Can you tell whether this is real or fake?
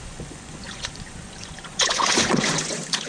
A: fake